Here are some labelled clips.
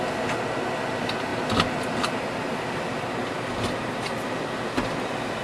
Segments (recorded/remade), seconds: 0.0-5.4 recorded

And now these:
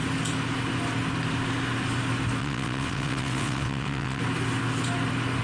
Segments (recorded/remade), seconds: 0.0-2.4 recorded; 2.4-4.2 remade; 4.2-5.4 recorded

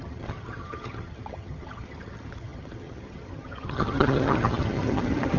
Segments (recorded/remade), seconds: 0.0-5.4 remade

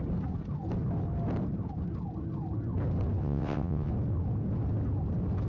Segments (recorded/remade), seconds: 0.0-3.2 recorded; 3.2-3.9 remade; 3.9-5.5 recorded

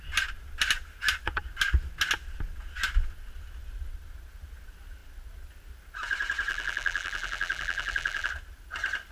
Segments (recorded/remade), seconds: 0.0-6.5 recorded; 6.5-8.3 remade; 8.3-9.1 recorded

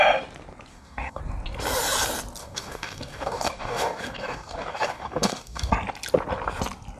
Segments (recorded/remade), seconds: 0.0-0.7 recorded; 0.7-1.2 remade; 1.2-2.4 recorded; 2.4-5.7 remade; 5.7-7.0 recorded

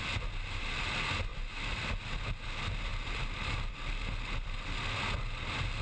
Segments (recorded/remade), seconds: 0.0-5.8 recorded